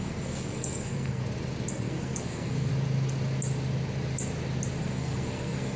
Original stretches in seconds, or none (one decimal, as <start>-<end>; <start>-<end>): 1.2-1.7; 2.7-4.8